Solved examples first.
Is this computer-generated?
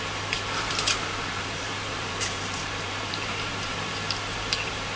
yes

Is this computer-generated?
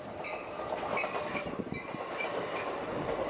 no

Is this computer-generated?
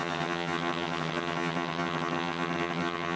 yes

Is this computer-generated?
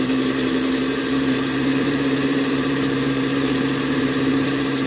yes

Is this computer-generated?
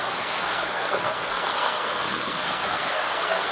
yes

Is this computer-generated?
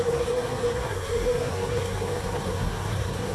yes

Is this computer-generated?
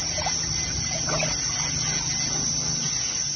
no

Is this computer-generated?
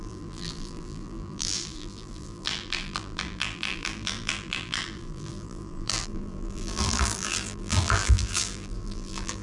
yes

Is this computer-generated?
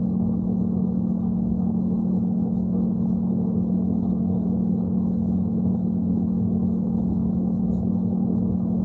yes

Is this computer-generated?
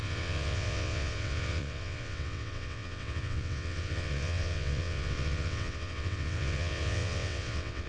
yes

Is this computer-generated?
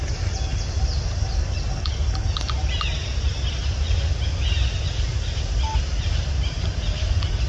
no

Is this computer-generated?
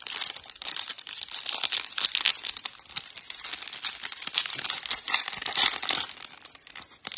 yes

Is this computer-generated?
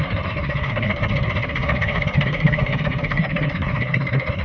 yes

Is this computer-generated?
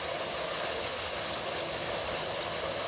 no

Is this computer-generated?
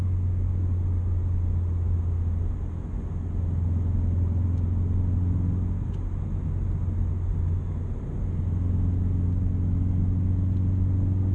no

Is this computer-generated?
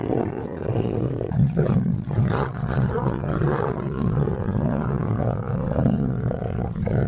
yes